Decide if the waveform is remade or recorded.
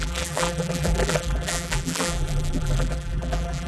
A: remade